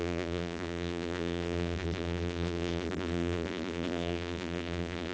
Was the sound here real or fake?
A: fake